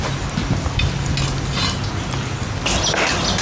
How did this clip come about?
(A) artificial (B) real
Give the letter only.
B